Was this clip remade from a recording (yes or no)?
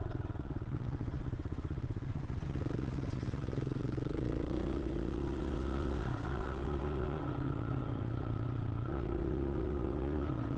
yes